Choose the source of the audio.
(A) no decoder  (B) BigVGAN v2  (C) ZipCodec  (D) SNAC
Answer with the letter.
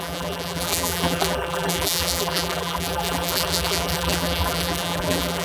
B